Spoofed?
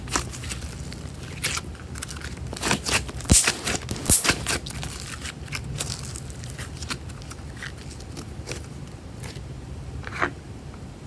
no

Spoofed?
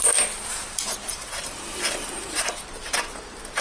yes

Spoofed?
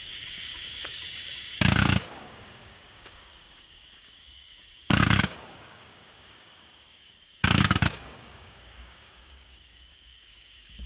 yes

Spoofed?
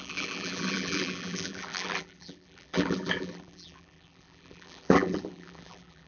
yes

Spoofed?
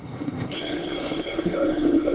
yes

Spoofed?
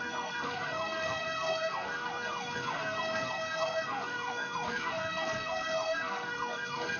yes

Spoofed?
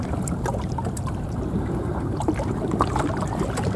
yes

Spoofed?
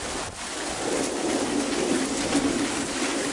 no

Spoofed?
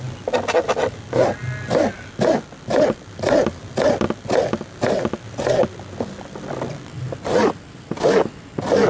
no